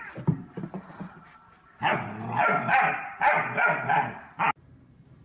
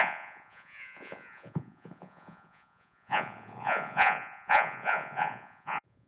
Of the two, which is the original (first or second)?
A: first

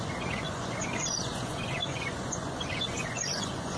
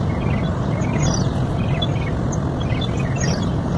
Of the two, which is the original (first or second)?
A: second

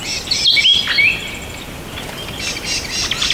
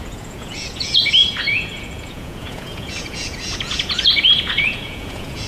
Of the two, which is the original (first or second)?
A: first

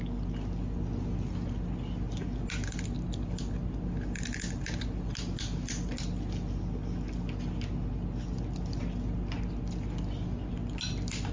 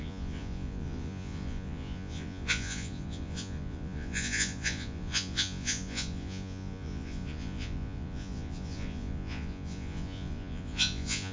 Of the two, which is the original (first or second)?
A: first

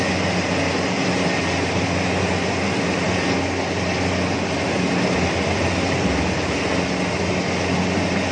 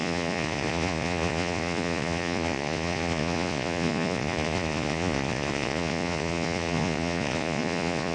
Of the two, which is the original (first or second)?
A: first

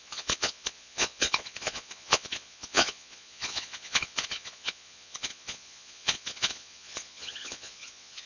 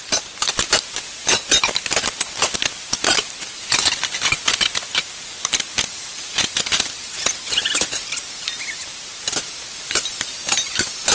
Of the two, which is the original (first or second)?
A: second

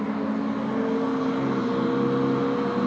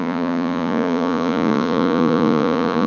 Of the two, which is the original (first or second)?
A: first